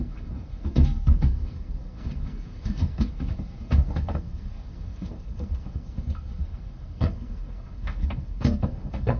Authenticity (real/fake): fake